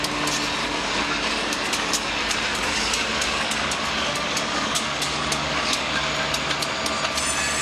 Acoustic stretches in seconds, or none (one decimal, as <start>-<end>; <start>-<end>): 0.0-0.6; 2.1-2.5; 6.1-7.6